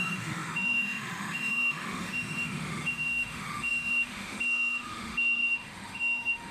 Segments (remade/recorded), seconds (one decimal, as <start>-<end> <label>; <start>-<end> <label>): 0.0-6.5 remade